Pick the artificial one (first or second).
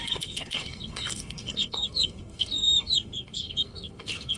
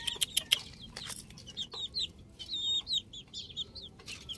first